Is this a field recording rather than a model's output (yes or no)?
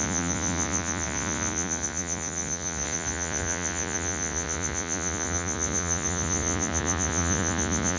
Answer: no